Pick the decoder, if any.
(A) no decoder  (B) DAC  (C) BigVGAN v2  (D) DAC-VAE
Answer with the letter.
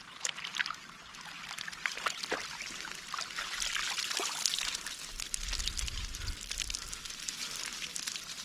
A